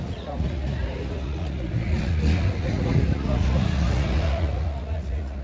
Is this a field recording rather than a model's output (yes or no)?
no